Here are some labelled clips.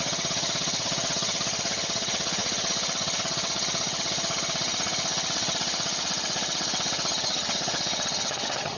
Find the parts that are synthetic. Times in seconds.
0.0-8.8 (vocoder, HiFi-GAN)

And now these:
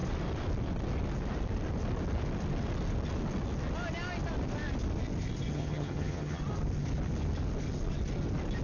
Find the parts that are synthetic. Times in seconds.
5.5-6.4 (vocoder, HiFi-GAN)

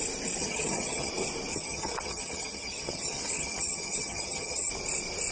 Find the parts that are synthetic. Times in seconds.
0.4-1.1 (vocoder, HiFi-GAN); 1.5-4.7

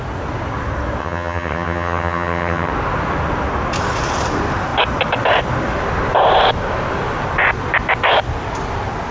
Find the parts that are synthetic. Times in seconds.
1.0-2.7 (vocoder, HiFi-GAN)